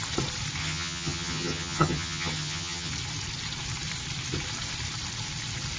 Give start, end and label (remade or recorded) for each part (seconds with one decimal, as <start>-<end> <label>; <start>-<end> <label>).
0.0-0.6 recorded; 0.6-2.9 remade; 2.9-5.8 recorded